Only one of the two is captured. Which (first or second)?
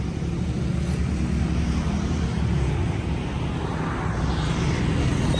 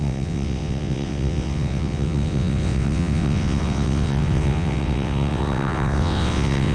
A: first